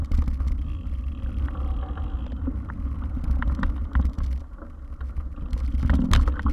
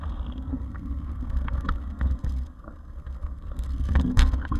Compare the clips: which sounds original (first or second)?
first